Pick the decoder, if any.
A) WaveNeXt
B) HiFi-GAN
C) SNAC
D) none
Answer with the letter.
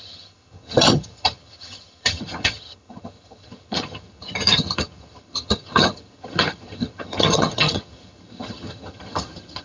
B